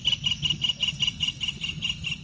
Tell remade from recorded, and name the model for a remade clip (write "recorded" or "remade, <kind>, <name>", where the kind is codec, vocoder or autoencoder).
recorded